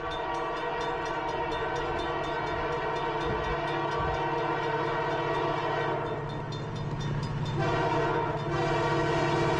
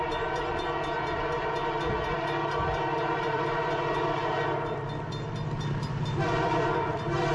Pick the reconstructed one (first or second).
second